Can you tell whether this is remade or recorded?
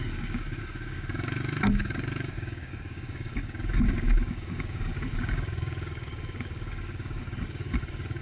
remade